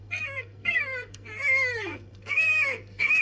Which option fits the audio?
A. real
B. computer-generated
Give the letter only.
B